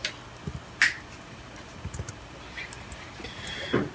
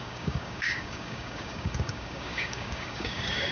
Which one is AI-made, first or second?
second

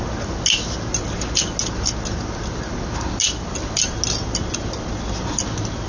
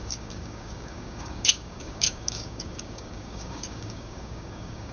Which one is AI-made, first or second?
second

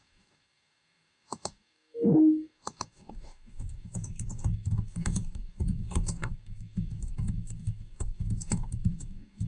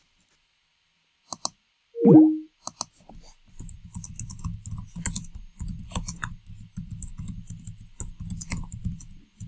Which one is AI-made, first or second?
first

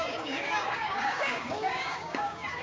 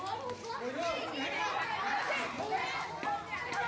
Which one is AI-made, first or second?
first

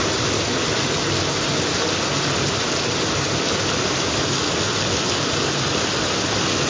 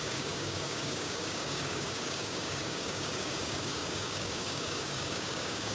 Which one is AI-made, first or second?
second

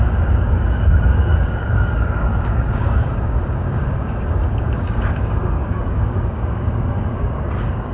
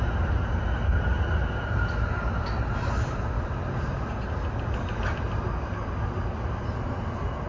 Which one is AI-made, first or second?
first